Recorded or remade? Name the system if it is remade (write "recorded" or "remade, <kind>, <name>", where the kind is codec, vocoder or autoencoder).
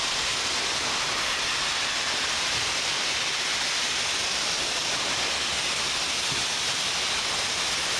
recorded